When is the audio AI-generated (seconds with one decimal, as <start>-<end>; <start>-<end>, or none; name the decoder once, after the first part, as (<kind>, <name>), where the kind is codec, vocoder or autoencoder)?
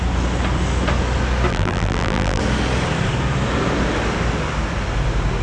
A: 1.5-2.4 (vocoder, BigVGAN v2)